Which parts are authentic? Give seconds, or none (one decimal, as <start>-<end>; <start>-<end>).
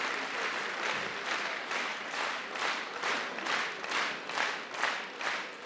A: 0.0-1.9; 3.3-5.7